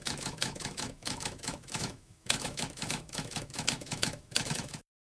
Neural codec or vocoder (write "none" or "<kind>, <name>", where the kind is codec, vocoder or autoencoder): autoencoder, DAC-VAE